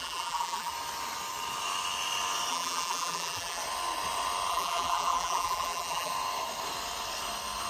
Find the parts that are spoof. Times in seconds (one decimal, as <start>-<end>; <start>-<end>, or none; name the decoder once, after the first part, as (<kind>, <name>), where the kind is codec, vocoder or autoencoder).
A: 0.0-0.7 (vocoder, BigVGAN v2); 2.5-3.6; 4.5-6.1